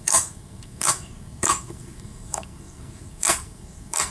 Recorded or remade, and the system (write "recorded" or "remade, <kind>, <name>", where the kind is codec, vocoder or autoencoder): remade, codec, SNAC